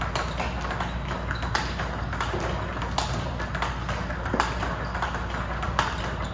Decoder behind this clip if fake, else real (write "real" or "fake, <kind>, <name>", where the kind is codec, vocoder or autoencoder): real